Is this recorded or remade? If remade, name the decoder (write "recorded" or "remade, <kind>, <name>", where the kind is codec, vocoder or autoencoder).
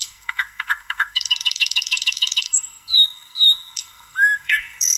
remade, codec, SNAC